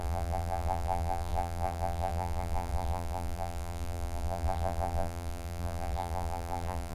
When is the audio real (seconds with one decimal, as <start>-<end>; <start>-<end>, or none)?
none